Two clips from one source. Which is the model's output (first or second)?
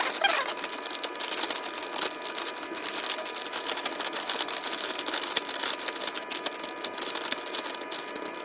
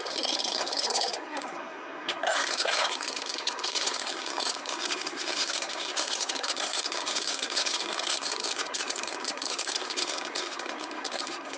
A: second